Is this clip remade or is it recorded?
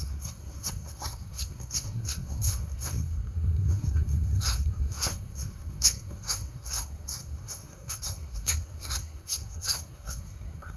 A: remade